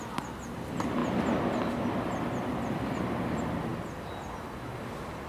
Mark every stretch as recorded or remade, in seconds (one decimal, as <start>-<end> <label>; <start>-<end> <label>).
0.0-1.0 remade; 1.0-2.0 recorded; 2.0-3.7 remade; 3.7-5.3 recorded